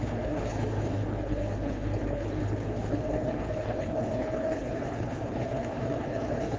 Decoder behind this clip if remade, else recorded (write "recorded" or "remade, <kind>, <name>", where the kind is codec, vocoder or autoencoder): remade, codec, HILCodec